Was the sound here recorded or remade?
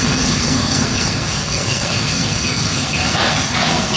remade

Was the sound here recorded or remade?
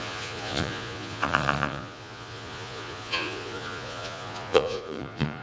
remade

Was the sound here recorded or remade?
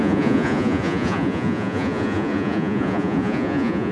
remade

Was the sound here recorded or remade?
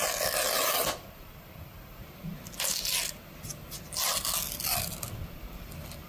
recorded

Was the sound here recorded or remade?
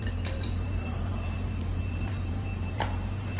remade